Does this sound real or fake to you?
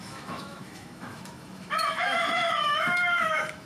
fake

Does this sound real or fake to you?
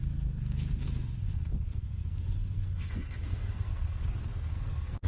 fake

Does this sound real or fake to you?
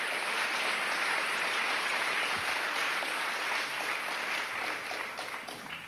real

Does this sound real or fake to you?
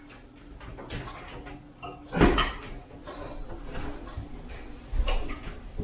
real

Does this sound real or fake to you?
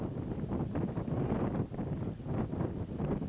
real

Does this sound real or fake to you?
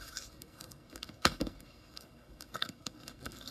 fake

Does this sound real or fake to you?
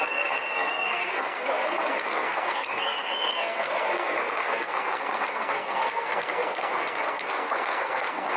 fake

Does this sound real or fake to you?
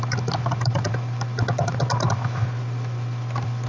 real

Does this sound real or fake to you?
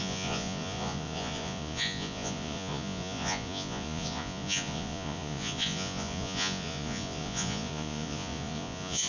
fake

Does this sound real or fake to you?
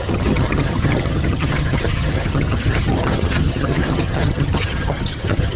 fake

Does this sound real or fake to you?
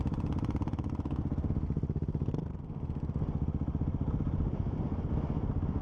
real